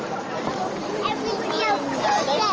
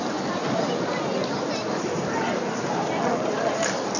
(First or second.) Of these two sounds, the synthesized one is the second